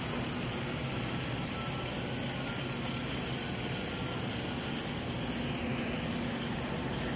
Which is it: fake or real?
real